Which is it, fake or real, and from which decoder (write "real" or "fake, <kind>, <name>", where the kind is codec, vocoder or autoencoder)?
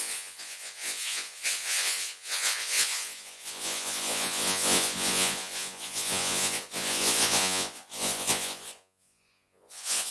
fake, vocoder, Vocos